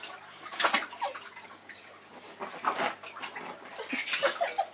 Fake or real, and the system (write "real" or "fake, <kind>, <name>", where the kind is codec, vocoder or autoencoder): real